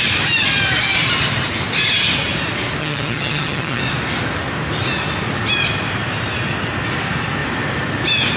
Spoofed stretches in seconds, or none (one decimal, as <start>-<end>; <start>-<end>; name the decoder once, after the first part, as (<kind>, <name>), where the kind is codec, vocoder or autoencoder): 2.8-3.8 (vocoder, HiFi-GAN)